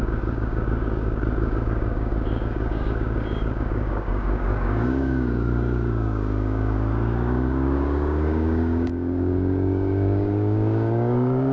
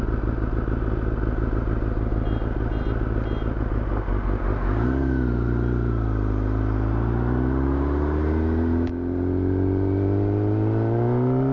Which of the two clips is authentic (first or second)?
second